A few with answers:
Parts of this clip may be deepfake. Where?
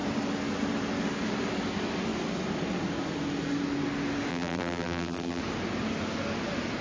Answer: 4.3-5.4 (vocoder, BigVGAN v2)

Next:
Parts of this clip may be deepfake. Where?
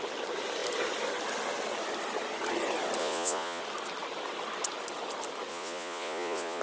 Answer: 3.0-3.6 (vocoder, Vocos); 5.5-6.6